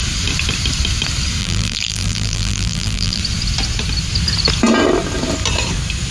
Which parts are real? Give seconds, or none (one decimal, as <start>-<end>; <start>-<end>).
0.0-1.4; 3.2-6.1